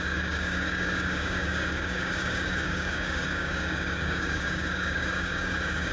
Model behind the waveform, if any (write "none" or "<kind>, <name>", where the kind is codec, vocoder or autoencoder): codec, DAC